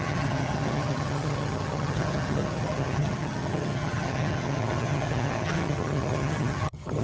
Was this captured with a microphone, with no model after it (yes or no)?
no